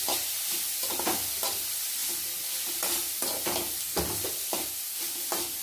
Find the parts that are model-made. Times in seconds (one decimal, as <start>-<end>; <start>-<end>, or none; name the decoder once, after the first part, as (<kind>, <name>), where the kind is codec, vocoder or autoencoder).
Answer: none